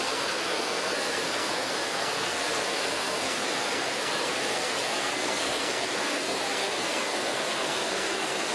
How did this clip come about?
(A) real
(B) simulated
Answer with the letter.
B